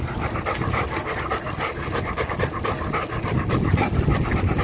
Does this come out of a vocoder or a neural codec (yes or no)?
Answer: no